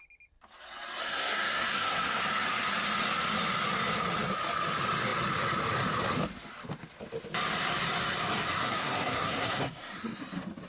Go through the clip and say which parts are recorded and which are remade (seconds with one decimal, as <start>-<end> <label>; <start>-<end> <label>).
0.0-1.0 recorded; 1.0-2.2 remade; 2.2-8.5 recorded; 8.5-10.2 remade; 10.2-10.7 recorded